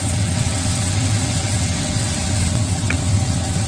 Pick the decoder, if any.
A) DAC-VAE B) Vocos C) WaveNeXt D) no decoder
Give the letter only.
C